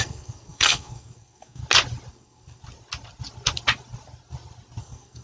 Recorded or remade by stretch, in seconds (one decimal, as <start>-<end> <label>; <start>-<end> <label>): 0.0-1.6 remade; 1.6-2.1 recorded; 2.1-2.6 remade; 2.6-4.8 recorded; 4.8-5.2 remade